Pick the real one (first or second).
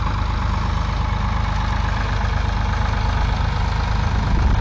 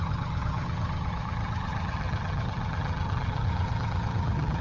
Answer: first